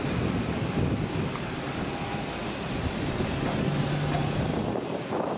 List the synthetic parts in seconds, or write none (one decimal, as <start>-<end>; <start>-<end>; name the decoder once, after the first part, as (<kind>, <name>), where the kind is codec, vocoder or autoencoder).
none